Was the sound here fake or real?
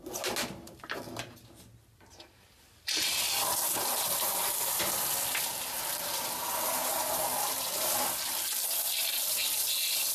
real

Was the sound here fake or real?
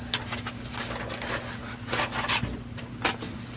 real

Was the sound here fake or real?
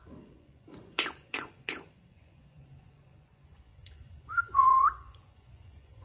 fake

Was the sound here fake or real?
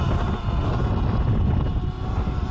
real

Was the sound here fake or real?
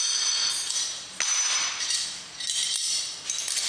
real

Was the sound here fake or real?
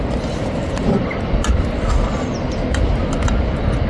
real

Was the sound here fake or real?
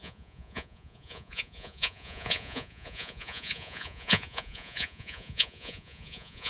fake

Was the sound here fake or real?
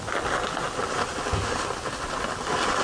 real